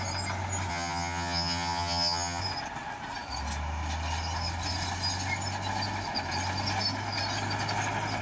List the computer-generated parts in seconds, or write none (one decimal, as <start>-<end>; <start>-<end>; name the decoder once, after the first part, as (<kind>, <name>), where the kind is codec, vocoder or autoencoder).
0.7-2.4 (vocoder, HiFi-GAN)